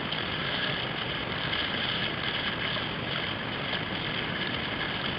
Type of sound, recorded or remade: recorded